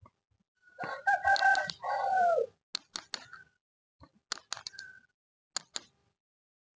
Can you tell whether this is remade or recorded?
recorded